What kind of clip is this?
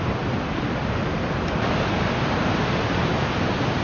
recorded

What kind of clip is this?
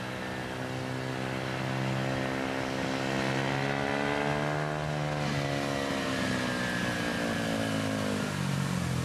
recorded